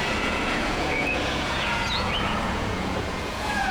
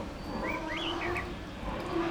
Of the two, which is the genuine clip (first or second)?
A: second